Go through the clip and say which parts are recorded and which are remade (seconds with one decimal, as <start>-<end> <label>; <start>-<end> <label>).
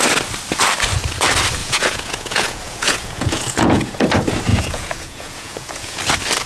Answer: 0.0-1.6 recorded; 1.6-4.0 remade; 4.0-4.5 recorded; 4.5-6.0 remade; 6.0-6.5 recorded